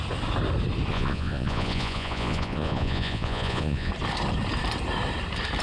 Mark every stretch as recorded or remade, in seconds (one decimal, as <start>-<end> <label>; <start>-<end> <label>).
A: 0.0-0.9 recorded; 0.9-3.9 remade; 3.9-5.6 recorded